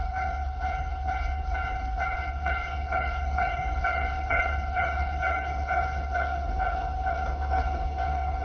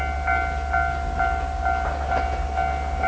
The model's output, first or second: first